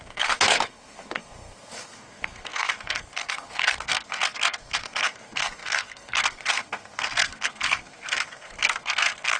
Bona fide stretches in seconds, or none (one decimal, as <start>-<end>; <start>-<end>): none